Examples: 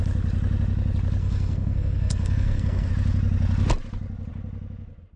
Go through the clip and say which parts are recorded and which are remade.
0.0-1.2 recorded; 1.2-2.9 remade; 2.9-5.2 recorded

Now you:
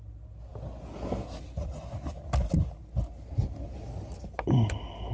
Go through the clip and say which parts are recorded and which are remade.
0.0-5.1 recorded

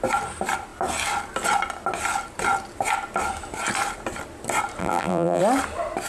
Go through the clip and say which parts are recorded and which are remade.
0.0-4.8 recorded; 4.8-5.4 remade; 5.4-6.1 recorded

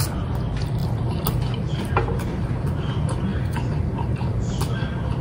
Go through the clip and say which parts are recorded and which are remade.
0.0-5.2 recorded

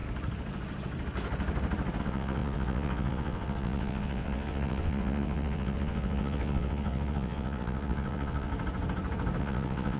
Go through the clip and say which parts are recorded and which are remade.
0.0-2.0 recorded; 2.0-8.5 remade; 8.5-9.4 recorded; 9.4-10.0 remade

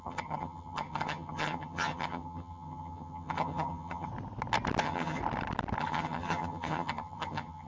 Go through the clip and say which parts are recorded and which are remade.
0.0-4.1 remade; 4.1-4.8 recorded; 4.8-5.2 remade; 5.2-5.8 recorded; 5.8-7.7 remade